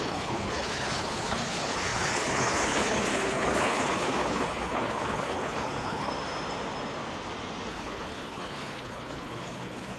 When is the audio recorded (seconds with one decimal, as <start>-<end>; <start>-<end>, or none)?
6.1-7.7